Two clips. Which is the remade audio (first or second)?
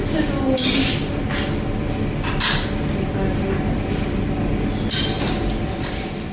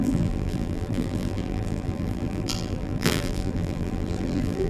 second